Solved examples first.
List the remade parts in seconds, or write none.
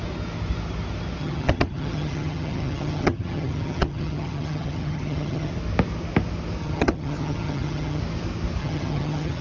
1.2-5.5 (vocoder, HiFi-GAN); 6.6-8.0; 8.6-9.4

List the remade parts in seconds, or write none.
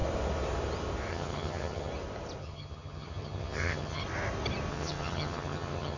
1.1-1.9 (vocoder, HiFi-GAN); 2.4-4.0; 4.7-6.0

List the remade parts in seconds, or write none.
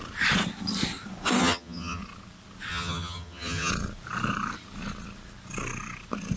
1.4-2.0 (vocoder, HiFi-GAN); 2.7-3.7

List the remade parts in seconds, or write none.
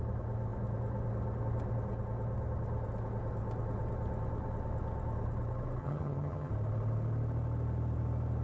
5.8-6.5 (vocoder, HiFi-GAN)